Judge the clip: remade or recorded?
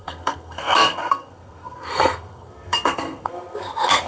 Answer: remade